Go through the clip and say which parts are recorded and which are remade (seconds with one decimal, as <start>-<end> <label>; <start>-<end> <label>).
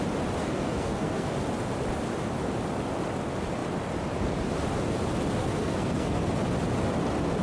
0.0-0.4 recorded; 0.4-1.3 remade; 1.3-5.4 recorded; 5.4-6.3 remade; 6.3-7.4 recorded